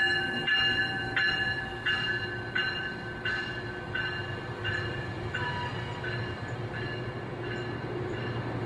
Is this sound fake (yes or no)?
no